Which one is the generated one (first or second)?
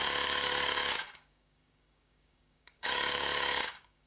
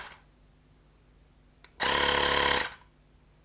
first